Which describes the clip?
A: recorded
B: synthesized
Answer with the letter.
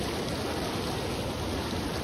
A